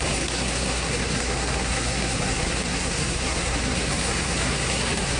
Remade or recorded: remade